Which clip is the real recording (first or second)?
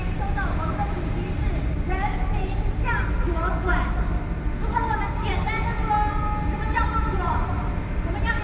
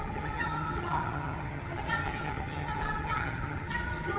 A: first